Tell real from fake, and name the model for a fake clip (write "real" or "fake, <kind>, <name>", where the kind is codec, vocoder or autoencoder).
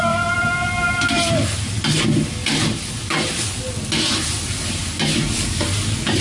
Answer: real